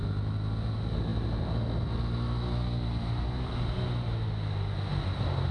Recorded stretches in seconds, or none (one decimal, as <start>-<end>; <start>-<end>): 0.0-5.5